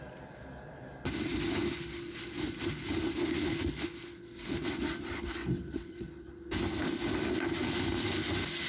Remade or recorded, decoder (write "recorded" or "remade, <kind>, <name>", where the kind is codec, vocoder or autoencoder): recorded